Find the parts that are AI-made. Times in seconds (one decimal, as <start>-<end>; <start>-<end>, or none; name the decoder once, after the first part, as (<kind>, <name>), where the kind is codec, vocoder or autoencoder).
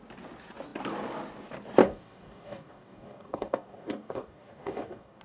1.8-5.2 (codec, DAC)